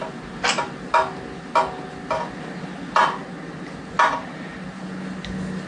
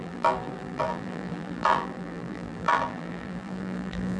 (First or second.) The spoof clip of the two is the second